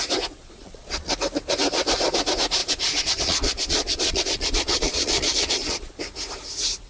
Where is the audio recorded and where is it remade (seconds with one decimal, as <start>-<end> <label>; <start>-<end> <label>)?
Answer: 0.0-0.4 recorded; 0.4-1.1 remade; 1.1-2.6 recorded; 2.6-6.0 remade; 6.0-6.9 recorded